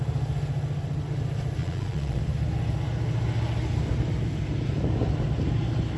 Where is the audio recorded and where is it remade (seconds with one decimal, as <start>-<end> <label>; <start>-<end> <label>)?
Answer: 0.0-1.6 recorded; 1.6-2.2 remade; 2.2-6.0 recorded

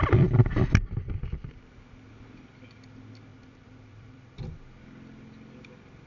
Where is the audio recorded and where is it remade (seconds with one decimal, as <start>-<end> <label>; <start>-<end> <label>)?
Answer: 0.0-1.4 remade; 1.4-3.3 recorded; 3.3-4.8 remade; 4.8-6.1 recorded

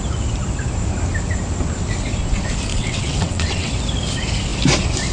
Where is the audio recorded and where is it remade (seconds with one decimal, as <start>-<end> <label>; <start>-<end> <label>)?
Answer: 0.0-2.7 recorded; 2.7-3.7 remade; 3.7-5.1 recorded